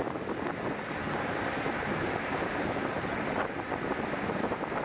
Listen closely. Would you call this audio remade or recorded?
recorded